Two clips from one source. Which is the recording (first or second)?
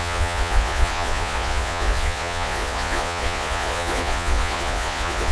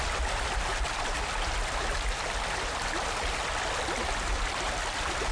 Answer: second